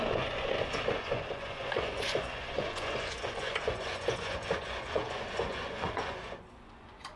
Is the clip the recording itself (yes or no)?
no